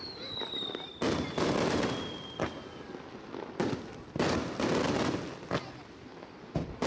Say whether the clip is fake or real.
real